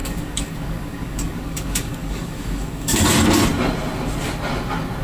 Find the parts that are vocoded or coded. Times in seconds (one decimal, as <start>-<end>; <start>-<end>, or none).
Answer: 0.0-3.0